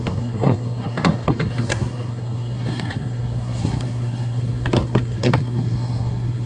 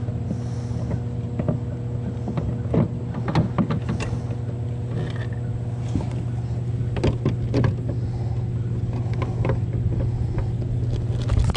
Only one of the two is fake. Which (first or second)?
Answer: first